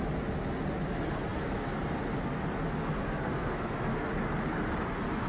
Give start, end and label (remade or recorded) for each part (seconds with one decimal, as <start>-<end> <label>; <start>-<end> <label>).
0.0-3.0 recorded; 3.0-4.1 remade; 4.1-5.3 recorded